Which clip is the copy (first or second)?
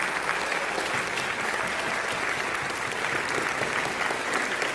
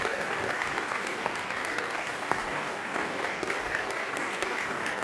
second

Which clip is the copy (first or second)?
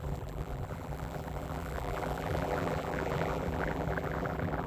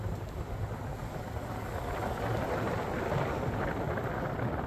first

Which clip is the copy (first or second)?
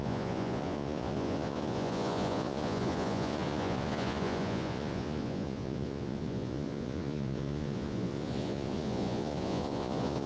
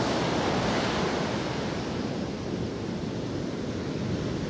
first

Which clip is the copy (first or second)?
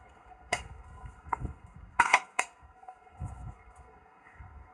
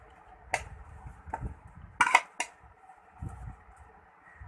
first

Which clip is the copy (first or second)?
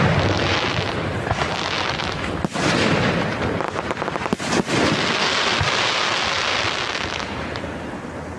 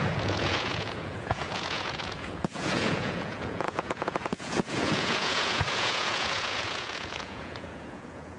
second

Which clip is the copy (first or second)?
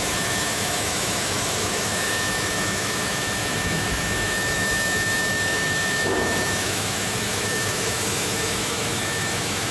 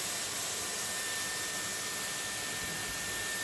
first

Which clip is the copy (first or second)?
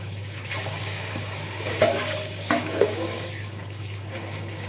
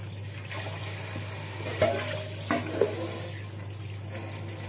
first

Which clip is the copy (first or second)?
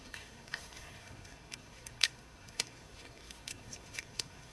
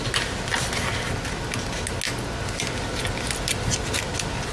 first